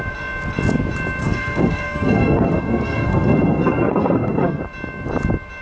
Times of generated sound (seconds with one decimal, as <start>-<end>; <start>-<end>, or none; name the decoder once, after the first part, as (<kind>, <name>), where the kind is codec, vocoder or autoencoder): 1.2-4.6 (codec, SNAC)